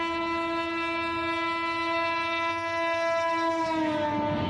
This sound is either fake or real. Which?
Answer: real